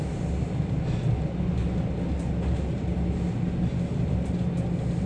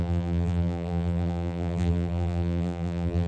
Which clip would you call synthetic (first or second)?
second